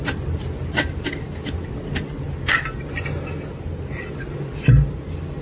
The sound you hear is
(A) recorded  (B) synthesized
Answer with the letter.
A